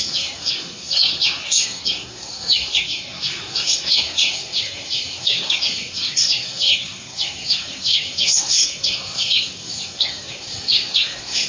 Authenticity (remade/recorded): remade